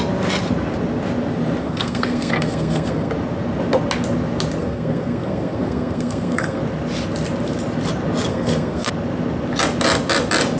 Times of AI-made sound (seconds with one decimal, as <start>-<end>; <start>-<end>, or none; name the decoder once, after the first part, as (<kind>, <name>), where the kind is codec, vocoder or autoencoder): 1.6-3.1 (codec, SNAC); 4.6-6.6; 8.3-8.9